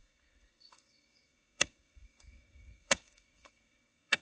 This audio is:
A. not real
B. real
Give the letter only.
A